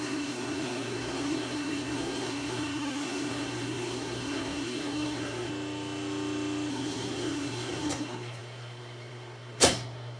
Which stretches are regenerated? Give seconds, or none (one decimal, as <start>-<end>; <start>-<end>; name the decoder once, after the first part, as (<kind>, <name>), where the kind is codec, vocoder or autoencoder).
0.0-5.5 (codec, SNAC); 6.7-10.2